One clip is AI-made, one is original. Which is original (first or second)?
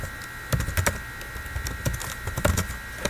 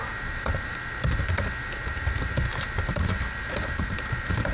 first